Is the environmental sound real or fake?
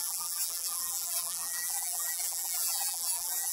fake